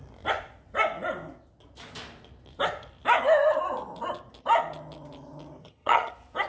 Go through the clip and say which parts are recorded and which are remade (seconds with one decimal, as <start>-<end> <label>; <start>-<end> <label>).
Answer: 0.0-5.6 recorded; 5.6-6.1 remade; 6.1-6.5 recorded